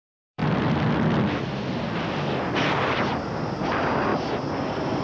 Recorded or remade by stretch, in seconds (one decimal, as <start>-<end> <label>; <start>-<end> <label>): 0.0-0.4 remade; 0.4-3.4 recorded; 3.4-5.0 remade